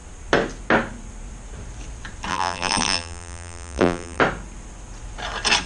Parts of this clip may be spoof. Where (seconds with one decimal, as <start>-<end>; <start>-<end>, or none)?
2.3-4.2